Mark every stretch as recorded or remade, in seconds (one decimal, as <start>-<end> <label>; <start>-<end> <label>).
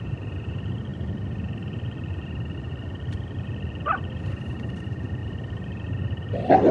0.0-0.9 remade; 0.9-4.2 recorded; 4.2-5.2 remade; 5.2-5.9 recorded; 5.9-6.7 remade